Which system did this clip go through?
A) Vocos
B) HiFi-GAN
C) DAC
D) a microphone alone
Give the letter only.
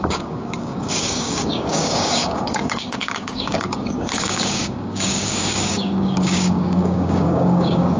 C